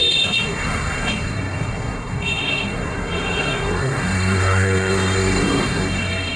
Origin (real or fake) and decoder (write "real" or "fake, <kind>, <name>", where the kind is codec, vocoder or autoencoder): fake, codec, SNAC